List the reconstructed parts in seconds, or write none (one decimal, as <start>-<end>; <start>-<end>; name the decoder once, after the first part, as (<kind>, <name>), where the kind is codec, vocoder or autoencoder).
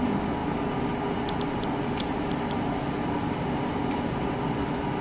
none